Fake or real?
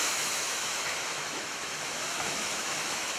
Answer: fake